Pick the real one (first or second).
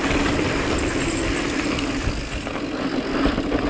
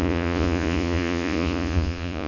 first